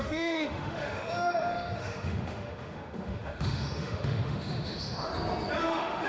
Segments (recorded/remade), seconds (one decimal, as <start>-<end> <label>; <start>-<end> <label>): 0.0-5.1 remade; 5.1-5.6 recorded; 5.6-6.1 remade